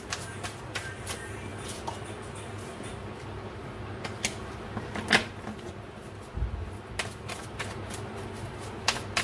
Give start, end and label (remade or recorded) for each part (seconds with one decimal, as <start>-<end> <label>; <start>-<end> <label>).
0.0-9.2 recorded